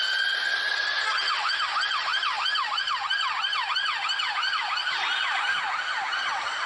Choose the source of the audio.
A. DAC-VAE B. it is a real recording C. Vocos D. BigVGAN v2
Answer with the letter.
B